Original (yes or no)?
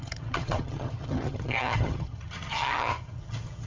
no